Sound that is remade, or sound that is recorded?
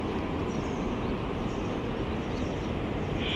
recorded